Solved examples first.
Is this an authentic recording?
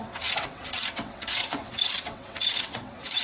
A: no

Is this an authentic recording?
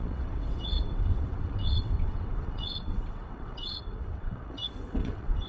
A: no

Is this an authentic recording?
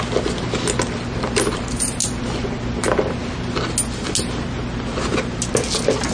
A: yes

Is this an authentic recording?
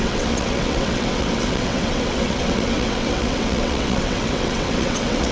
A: no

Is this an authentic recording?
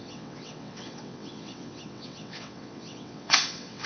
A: no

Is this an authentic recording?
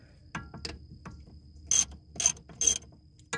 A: yes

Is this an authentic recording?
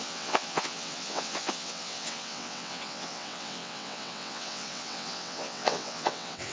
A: no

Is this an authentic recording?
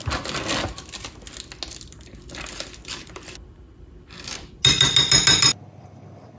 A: yes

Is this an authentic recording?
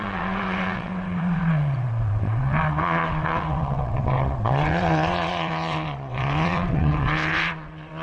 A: no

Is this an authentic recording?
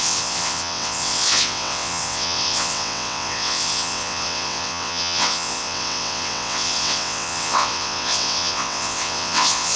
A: no